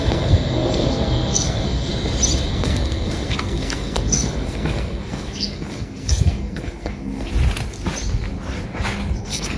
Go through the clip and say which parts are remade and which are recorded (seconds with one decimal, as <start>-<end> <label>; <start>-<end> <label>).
0.0-1.9 remade; 1.9-2.5 recorded; 2.5-7.3 remade; 7.3-9.2 recorded; 9.2-9.6 remade